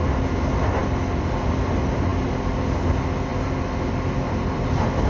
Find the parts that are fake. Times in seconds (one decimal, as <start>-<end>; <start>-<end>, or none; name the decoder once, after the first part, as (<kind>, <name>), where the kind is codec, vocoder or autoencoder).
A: none